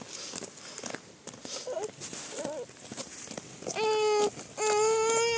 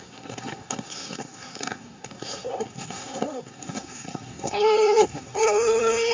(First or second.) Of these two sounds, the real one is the first